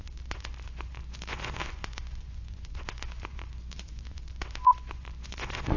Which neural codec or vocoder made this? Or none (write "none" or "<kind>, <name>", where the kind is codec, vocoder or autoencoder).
vocoder, Vocos